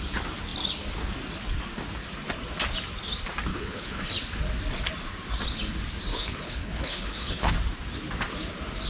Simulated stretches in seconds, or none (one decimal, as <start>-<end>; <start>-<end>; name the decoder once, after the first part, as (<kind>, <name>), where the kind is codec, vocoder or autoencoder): 3.5-4.1 (codec, HILCodec); 6.1-7.5